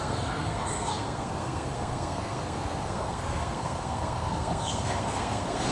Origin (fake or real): fake